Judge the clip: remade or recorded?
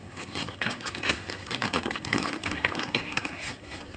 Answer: remade